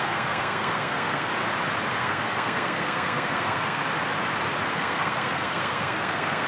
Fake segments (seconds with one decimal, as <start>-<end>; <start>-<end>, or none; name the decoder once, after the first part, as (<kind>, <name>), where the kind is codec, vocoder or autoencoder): 0.0-1.3 (codec, SNAC); 1.9-3.8; 4.7-6.5